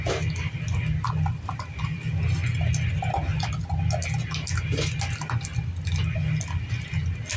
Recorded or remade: recorded